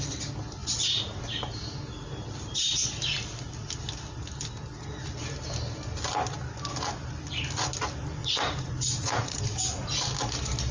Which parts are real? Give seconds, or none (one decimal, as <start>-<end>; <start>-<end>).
0.0-8.2; 9.4-10.7